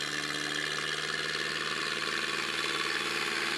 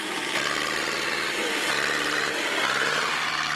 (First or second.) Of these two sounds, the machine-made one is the second